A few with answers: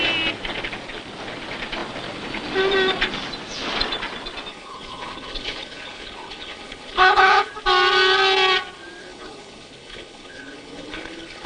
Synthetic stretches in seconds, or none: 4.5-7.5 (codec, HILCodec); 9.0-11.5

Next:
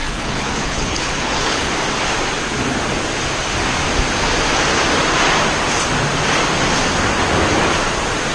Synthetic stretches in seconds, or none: 0.0-1.7 (codec, HILCodec)

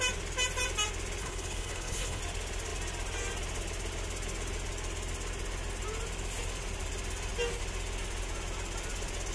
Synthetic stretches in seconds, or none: 1.2-2.2 (codec, HILCodec)

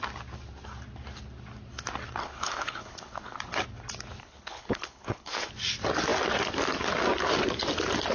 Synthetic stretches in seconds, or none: 2.2-3.4 (codec, HILCodec); 4.2-5.5